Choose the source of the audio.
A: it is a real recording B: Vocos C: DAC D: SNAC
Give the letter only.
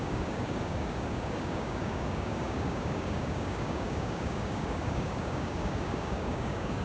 C